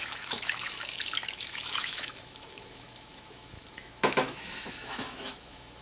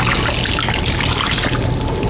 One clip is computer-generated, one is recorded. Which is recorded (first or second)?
second